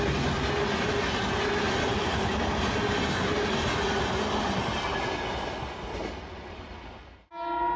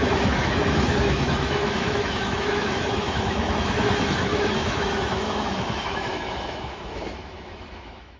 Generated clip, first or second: second